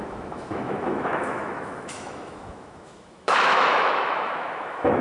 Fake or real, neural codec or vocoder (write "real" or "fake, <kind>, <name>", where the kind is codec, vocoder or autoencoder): fake, autoencoder, DAC-VAE